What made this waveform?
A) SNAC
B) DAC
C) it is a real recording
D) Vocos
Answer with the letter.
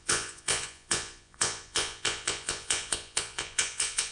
D